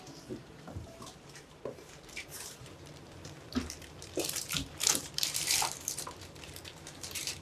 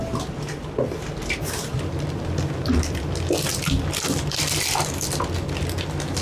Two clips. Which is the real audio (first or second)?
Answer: second